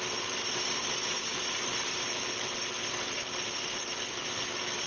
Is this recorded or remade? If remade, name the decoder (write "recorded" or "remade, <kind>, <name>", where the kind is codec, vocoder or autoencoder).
recorded